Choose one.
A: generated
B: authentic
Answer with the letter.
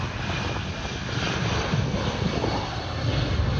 B